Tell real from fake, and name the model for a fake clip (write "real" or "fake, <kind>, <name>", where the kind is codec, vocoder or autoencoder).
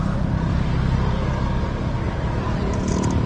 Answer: real